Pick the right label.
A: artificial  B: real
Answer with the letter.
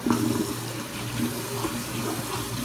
B